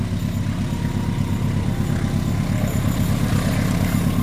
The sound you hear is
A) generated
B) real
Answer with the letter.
B